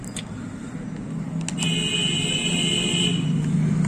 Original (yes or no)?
yes